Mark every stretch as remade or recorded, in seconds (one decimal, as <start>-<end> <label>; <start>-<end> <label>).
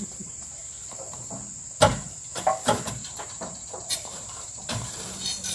0.0-0.6 remade; 0.6-1.9 recorded; 1.9-2.3 remade; 2.3-2.9 recorded; 2.9-5.5 remade